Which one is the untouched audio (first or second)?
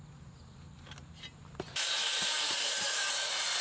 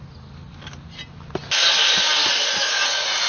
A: second